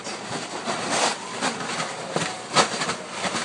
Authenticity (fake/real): real